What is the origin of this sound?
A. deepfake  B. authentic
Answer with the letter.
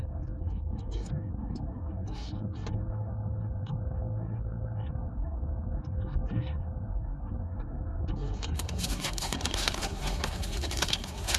A